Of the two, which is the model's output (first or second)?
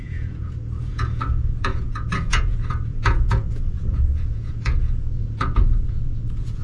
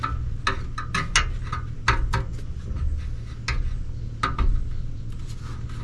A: first